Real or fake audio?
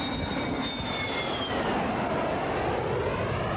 real